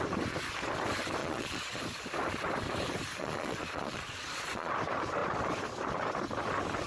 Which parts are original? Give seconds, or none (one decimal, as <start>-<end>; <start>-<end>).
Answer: 0.0-1.2; 1.8-3.2; 4.7-6.9